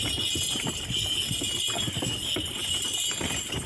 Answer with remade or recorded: recorded